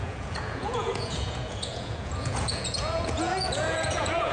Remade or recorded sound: remade